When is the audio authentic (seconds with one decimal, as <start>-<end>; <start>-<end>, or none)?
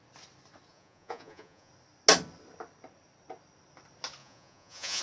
0.0-0.7; 1.7-4.2